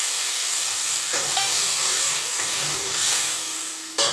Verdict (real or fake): fake